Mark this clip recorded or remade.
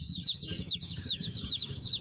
remade